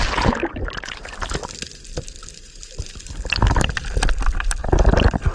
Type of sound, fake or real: real